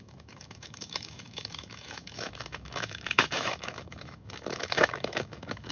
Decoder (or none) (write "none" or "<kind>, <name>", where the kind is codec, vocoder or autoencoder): autoencoder, DAC-VAE